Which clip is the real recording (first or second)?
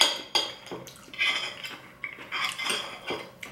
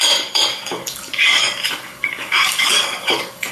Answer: first